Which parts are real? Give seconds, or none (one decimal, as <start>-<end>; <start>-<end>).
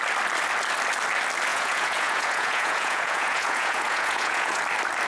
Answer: 0.0-1.5; 4.6-5.1